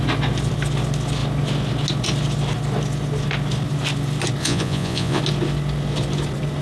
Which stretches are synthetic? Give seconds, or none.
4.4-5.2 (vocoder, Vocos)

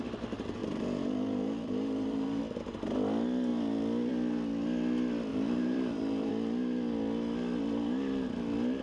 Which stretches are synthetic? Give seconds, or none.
0.6-2.4 (vocoder, BigVGAN v2); 5.3-6.3

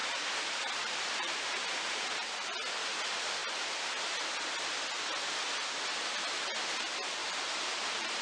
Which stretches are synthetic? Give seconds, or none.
0.0-2.1 (vocoder, BigVGAN v2); 7.2-8.2

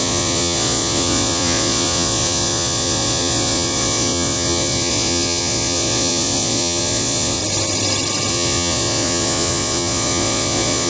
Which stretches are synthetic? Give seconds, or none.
0.0-7.4 (vocoder, Vocos); 8.3-10.9

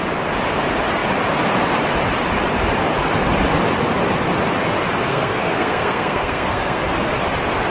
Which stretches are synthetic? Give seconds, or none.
5.1-6.8 (codec, SNAC)

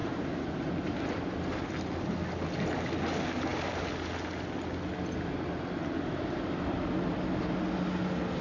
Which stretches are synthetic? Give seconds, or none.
0.0-1.7 (vocoder, BigVGAN v2)

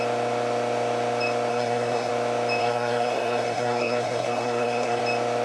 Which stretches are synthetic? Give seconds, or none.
1.5-2.1 (codec, SNAC); 2.6-5.0

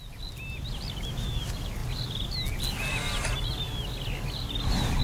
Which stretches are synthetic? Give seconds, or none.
none